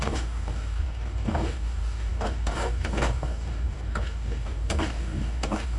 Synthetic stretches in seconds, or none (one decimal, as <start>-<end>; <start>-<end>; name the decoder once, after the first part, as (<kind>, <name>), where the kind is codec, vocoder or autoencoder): 0.0-5.8 (codec, DAC)